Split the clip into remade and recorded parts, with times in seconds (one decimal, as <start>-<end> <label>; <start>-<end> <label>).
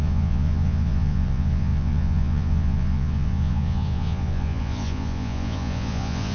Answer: 0.0-6.3 remade